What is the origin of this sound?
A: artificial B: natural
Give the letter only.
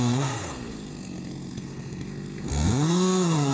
A